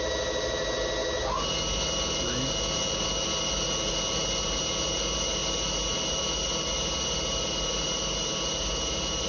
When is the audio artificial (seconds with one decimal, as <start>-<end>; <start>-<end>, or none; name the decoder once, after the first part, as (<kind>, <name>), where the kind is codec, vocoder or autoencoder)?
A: none